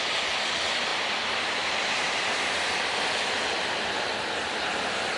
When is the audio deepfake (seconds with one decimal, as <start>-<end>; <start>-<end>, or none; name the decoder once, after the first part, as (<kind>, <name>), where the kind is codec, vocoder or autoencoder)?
0.9-4.0 (vocoder, BigVGAN v2)